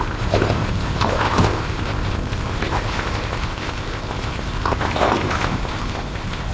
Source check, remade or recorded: remade